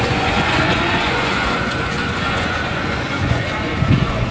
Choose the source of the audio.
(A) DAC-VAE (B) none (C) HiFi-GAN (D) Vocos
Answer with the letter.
D